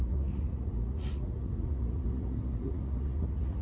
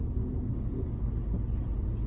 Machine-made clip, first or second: first